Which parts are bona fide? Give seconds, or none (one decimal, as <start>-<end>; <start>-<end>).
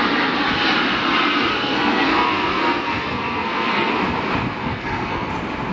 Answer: 0.0-1.5; 3.9-4.6; 5.3-5.7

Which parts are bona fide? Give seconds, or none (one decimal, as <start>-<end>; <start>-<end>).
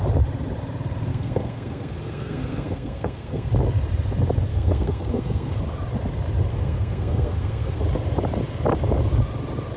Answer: 0.0-1.1; 3.5-4.5; 5.6-6.5; 7.8-9.8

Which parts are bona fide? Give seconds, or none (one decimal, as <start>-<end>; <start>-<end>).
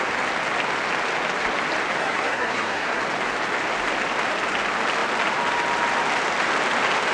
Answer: 0.0-2.0; 3.0-7.1